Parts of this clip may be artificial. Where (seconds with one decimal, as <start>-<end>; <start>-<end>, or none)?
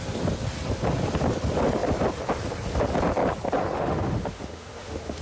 3.6-5.2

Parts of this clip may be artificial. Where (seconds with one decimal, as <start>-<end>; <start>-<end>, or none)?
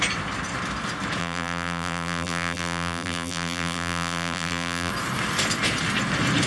1.2-4.9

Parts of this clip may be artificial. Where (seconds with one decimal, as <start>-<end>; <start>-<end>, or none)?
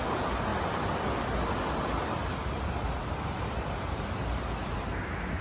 0.5-1.5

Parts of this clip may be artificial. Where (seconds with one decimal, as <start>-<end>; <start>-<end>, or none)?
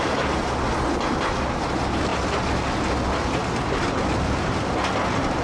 none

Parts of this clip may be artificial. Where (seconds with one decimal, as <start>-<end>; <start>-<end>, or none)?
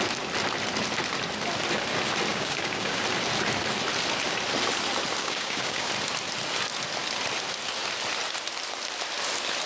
2.3-3.0; 5.2-5.9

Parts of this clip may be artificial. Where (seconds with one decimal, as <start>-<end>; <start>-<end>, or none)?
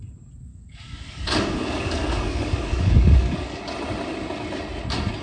0.5-3.6